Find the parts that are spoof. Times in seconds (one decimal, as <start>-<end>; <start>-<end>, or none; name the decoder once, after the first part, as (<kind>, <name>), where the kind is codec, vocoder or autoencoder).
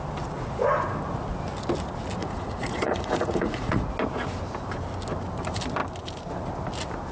2.2-3.9 (vocoder, Vocos)